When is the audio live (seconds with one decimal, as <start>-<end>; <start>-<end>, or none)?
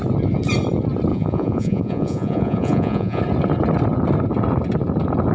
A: 0.0-1.1; 3.2-5.3